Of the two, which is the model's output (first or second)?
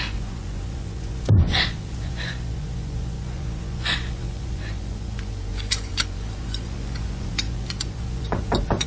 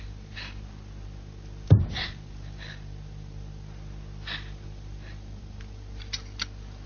first